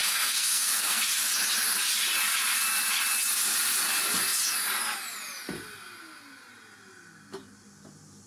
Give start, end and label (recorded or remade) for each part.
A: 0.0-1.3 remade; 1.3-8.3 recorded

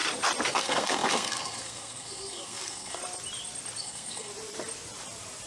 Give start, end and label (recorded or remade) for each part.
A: 0.0-0.5 recorded; 0.5-3.0 remade; 3.0-3.8 recorded; 3.8-4.3 remade; 4.3-5.5 recorded

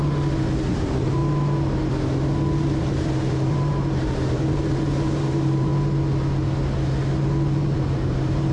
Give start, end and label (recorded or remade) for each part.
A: 0.0-0.7 recorded; 0.7-1.2 remade; 1.2-2.6 recorded; 2.6-5.7 remade; 5.7-7.5 recorded; 7.5-8.5 remade

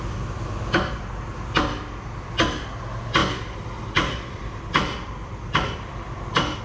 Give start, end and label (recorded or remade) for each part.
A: 0.0-3.2 recorded; 3.2-6.6 remade